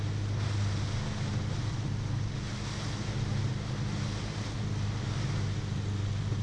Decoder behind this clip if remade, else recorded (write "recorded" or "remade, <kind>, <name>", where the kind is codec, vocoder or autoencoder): recorded